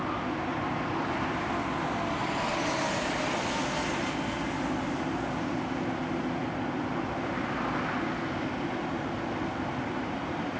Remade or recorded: recorded